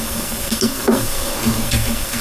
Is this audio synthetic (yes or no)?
yes